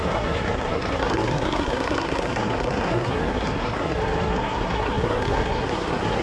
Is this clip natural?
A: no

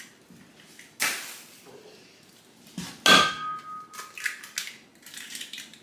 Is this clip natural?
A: yes